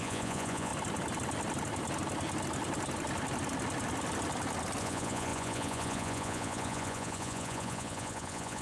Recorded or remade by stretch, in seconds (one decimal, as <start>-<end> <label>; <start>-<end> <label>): 0.0-0.7 remade; 0.7-4.8 recorded; 4.8-8.6 remade